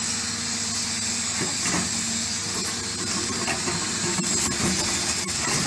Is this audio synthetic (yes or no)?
no